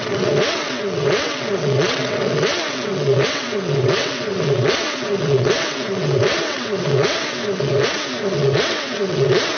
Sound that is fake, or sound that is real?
fake